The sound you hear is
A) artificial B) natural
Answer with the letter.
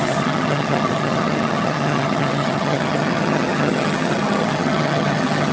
A